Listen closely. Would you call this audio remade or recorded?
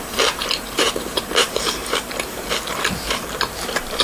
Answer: remade